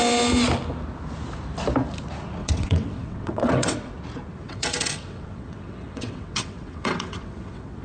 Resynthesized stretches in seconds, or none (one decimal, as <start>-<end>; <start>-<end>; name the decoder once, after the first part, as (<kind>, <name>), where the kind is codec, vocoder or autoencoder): 2.4-3.9 (vocoder, WaveNeXt); 4.4-7.8